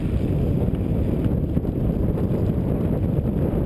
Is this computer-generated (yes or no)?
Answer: no